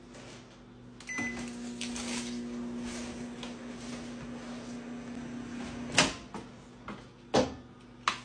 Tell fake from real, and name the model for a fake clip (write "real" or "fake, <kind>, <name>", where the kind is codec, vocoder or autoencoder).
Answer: real